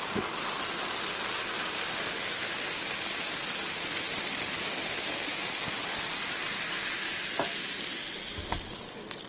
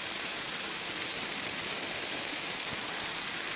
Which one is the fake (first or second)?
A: second